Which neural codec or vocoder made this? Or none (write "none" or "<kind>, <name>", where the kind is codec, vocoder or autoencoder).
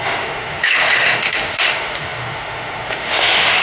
autoencoder, DAC-VAE